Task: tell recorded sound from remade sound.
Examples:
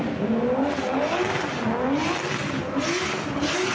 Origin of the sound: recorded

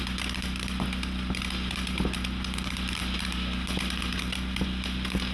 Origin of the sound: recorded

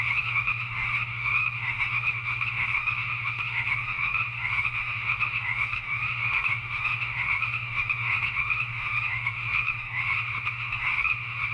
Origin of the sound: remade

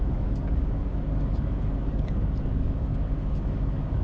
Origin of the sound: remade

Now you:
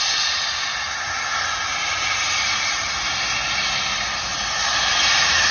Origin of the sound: recorded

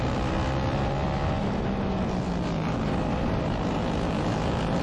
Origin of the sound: recorded